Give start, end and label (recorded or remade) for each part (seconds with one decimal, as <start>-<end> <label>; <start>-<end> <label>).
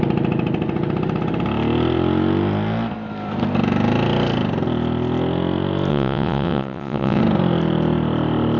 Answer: 0.0-5.9 recorded; 5.9-7.2 remade; 7.2-8.6 recorded